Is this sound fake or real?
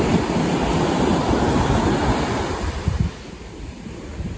real